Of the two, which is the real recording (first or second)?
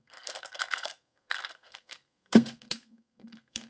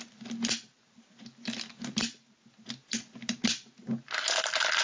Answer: second